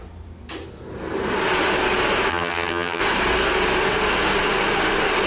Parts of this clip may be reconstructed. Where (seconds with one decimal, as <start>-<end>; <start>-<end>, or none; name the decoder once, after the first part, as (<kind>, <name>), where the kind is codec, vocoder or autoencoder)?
2.3-3.0 (vocoder, HiFi-GAN)